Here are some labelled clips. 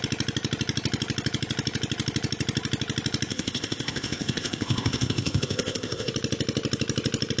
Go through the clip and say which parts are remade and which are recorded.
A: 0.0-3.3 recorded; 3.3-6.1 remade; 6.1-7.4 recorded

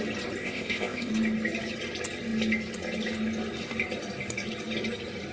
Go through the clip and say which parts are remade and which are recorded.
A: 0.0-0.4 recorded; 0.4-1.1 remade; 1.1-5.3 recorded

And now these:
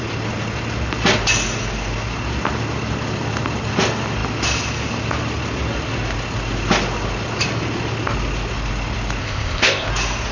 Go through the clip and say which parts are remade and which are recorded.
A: 0.0-9.2 recorded; 9.2-9.9 remade; 9.9-10.3 recorded

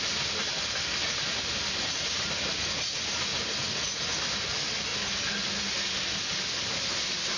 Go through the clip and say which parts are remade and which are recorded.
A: 0.0-7.4 recorded

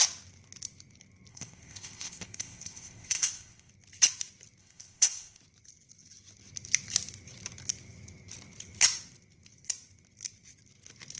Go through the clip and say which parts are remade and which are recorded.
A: 0.0-1.3 recorded; 1.3-3.7 remade; 3.7-4.6 recorded; 4.6-5.4 remade; 5.4-11.2 recorded